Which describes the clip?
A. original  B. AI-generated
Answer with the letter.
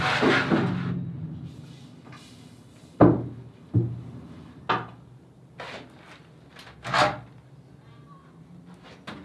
A